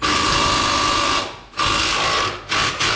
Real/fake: real